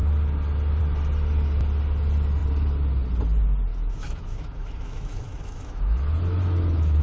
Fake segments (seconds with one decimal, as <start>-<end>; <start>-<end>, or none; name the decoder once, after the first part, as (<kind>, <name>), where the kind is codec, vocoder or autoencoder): 3.7-7.0 (autoencoder, DAC-VAE)